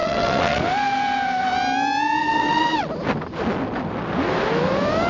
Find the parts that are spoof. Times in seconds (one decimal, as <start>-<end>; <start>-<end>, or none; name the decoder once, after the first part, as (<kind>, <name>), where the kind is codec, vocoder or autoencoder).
0.0-0.6 (vocoder, WaveNeXt); 2.2-2.9